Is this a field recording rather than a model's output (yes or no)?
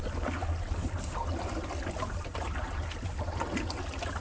yes